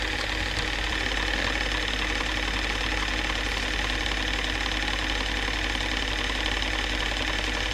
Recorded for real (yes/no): yes